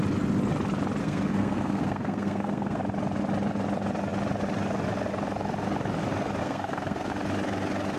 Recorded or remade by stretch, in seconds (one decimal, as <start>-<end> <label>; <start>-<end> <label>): 0.0-1.0 recorded; 1.0-2.8 remade; 2.8-6.4 recorded; 6.4-7.1 remade; 7.1-8.0 recorded